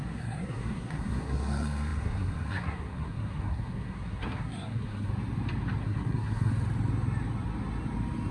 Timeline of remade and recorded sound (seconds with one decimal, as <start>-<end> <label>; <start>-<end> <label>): 0.0-5.1 remade; 5.1-5.8 recorded; 5.8-6.5 remade; 6.5-8.3 recorded